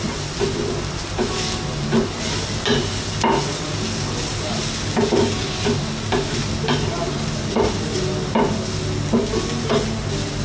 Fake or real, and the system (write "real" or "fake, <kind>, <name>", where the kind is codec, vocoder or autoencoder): real